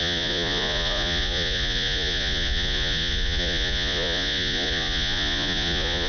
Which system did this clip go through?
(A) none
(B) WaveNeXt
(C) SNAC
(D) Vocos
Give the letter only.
D